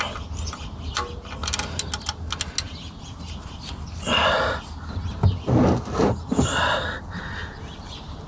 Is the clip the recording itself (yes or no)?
yes